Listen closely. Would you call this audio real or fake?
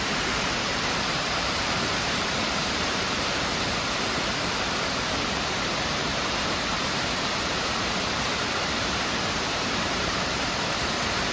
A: fake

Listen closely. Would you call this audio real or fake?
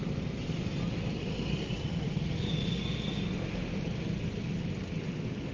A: real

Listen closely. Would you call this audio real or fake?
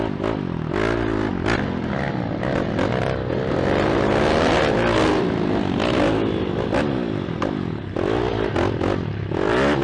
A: real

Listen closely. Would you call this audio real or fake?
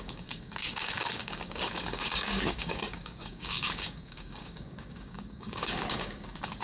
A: fake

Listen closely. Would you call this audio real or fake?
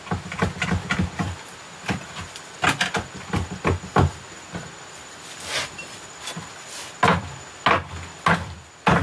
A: real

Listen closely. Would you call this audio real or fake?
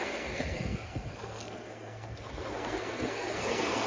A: fake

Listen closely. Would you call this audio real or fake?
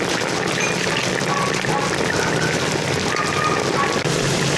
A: real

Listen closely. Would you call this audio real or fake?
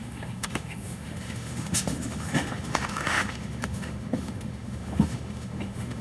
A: fake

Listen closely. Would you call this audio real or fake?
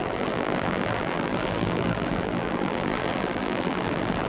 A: fake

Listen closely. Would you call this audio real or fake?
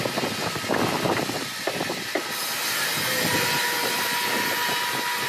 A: real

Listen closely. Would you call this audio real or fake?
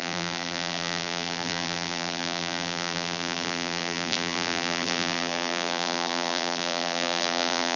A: fake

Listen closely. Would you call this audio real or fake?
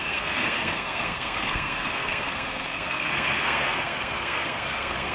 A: fake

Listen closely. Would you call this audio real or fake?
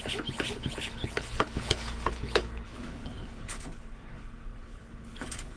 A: fake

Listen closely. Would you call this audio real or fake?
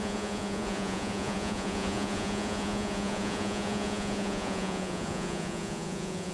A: fake